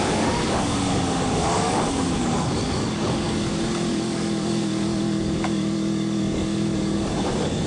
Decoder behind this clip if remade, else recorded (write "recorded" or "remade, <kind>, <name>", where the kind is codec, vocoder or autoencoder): remade, codec, DAC